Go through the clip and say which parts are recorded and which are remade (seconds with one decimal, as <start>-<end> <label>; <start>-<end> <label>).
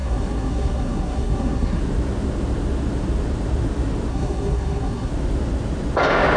0.0-1.8 remade; 1.8-4.1 recorded; 4.1-5.1 remade; 5.1-6.4 recorded